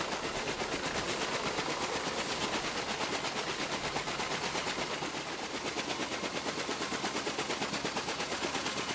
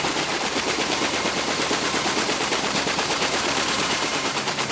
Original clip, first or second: first